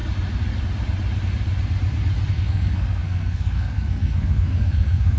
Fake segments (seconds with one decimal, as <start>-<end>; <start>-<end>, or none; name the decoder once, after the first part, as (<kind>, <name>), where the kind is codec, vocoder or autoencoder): 2.3-5.2 (codec, SNAC)